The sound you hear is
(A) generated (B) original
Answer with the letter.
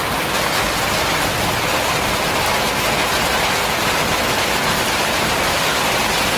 B